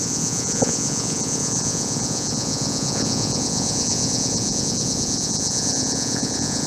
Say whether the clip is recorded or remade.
remade